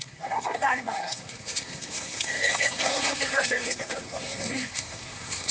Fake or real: fake